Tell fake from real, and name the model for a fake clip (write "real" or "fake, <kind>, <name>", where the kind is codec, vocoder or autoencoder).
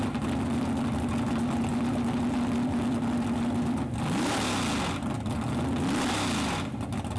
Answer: real